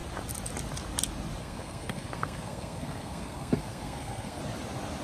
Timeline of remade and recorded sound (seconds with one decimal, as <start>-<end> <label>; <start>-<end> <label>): 0.0-1.4 recorded; 1.4-4.4 remade; 4.4-5.0 recorded